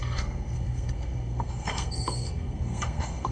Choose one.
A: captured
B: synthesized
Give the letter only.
B